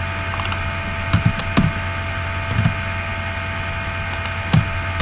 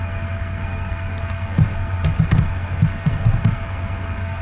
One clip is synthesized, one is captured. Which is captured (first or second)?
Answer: first